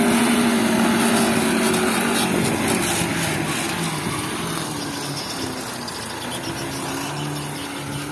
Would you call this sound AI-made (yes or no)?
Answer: no